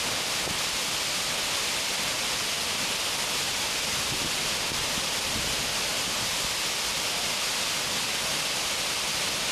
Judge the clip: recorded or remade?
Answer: recorded